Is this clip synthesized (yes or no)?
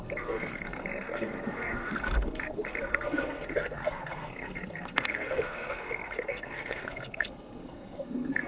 yes